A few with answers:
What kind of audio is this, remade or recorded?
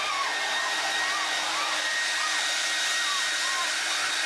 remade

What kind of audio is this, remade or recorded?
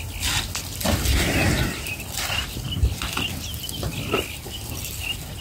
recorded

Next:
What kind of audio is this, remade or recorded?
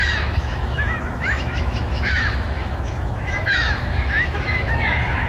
remade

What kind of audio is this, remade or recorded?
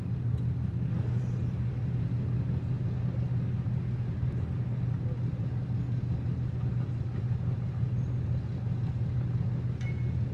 recorded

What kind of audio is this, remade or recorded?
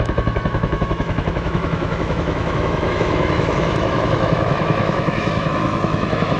remade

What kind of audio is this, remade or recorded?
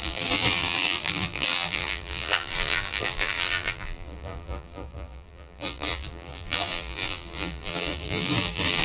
remade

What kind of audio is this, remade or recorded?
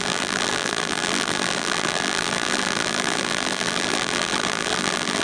remade